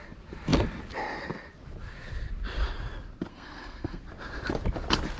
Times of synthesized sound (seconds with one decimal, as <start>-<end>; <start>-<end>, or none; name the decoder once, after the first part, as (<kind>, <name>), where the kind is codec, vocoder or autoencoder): 3.3-4.0 (codec, SNAC)